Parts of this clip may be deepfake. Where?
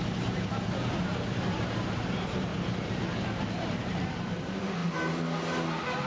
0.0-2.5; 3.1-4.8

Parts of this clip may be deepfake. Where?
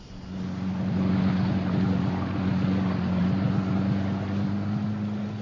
none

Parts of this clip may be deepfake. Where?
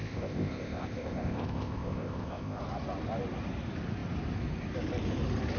0.0-2.6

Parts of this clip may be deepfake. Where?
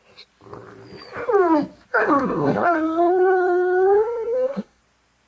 1.9-4.8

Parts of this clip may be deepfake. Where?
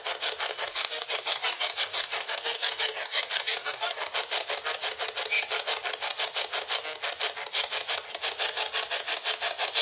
0.5-4.0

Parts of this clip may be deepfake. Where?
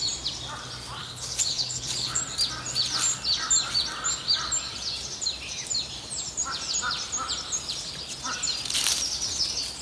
1.0-2.2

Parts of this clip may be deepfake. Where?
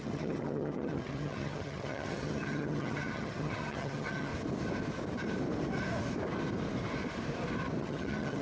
0.0-4.3; 7.8-8.4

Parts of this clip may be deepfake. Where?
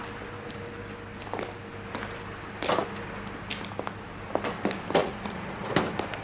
5.0-5.7